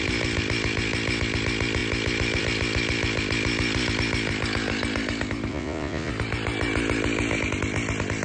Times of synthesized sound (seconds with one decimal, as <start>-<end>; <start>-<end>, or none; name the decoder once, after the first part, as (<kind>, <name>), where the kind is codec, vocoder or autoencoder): 5.5-6.1 (vocoder, Vocos)